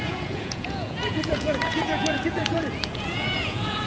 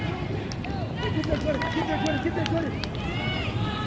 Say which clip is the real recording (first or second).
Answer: second